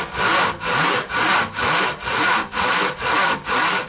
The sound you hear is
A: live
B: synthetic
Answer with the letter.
A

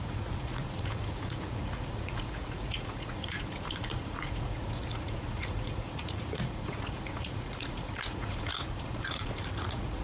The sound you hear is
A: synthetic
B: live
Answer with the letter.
A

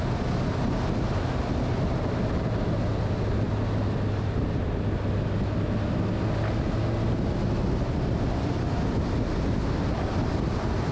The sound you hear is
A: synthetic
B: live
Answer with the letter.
B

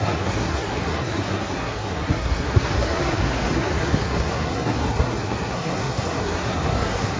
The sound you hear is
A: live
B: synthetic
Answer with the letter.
B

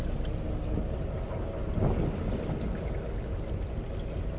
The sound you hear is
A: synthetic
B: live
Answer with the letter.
B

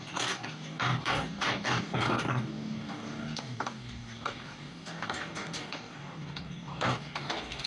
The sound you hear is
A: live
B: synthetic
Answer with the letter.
B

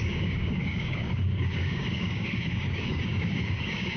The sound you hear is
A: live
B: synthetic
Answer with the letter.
B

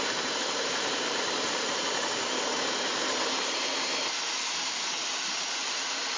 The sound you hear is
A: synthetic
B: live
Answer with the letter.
A